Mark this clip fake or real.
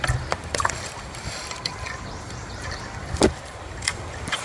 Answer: fake